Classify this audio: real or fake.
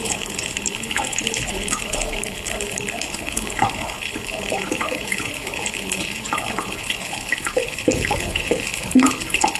fake